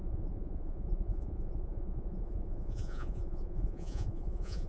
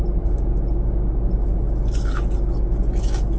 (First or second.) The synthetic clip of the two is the first